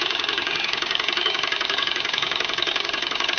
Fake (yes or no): yes